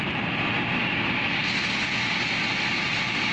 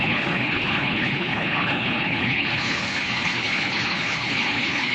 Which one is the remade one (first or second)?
second